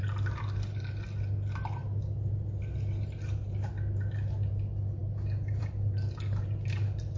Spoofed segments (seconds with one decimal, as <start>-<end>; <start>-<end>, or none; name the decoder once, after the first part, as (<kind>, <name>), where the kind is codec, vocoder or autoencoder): none